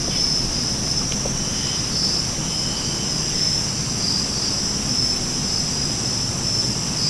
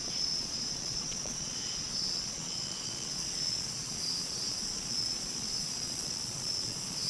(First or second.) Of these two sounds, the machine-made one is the second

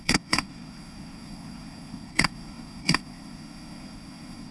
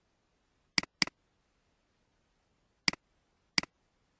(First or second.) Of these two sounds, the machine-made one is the first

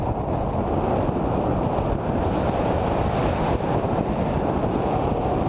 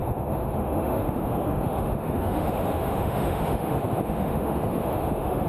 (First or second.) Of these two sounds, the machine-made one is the second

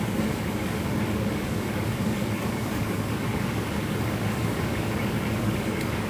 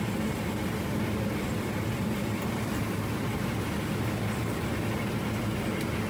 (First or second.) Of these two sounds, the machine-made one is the first